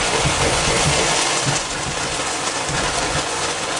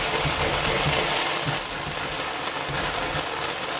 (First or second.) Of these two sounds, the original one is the second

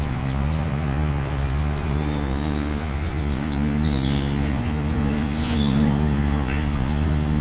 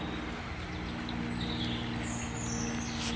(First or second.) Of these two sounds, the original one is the second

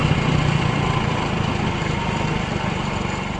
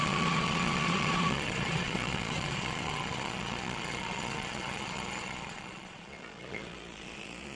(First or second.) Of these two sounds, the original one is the first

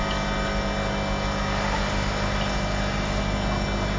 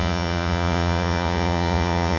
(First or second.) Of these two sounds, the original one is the first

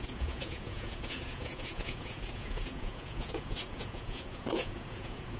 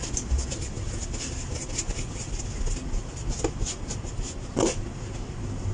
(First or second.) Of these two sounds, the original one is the second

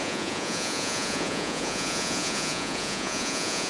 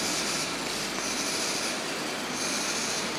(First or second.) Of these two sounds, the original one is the second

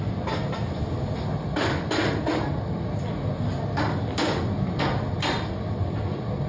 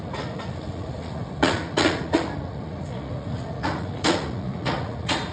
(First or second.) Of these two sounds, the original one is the first